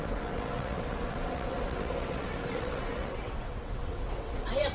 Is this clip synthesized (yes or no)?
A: yes